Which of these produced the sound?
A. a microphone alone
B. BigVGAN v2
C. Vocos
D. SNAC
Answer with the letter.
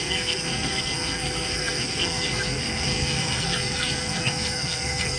D